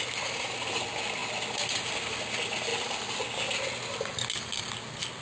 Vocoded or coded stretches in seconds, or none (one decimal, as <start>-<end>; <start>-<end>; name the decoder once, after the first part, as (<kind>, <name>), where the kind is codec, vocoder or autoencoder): none